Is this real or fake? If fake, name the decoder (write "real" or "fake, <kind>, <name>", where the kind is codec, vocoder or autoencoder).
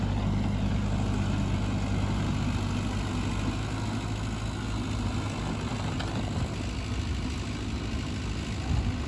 real